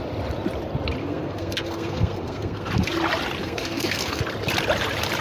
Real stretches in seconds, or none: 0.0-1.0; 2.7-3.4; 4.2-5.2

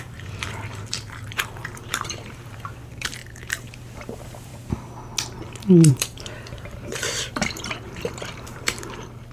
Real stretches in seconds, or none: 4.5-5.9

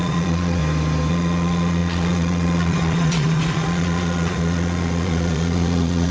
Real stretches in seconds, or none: 0.6-1.1